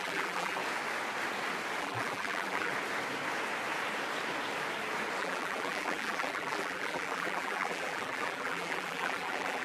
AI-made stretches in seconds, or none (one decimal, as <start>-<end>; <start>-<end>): 0.0-0.6; 1.8-2.7; 5.2-9.6

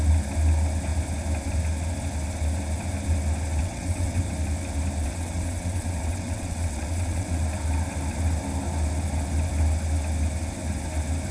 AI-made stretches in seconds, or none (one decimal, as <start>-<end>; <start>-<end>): 3.6-4.2; 5.0-7.4

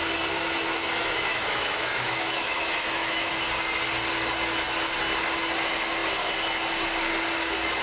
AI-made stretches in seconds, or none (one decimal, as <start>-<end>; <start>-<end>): 1.3-3.3

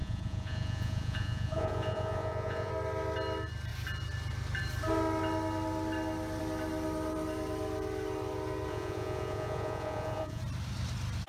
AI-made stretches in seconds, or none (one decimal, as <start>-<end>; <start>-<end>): 0.0-2.7; 8.7-10.4

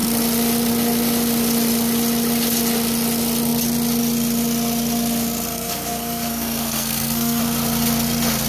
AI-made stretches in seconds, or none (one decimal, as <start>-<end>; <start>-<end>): 5.5-7.4